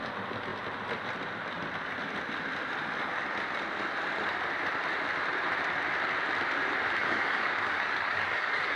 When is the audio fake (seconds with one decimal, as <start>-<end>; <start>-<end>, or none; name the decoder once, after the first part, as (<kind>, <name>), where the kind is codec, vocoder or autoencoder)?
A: 7.0-8.8 (codec, DAC)